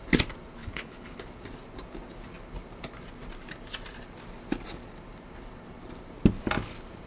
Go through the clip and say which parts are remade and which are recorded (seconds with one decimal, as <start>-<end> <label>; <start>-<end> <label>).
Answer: 0.0-0.6 recorded; 0.6-1.2 remade; 1.2-7.1 recorded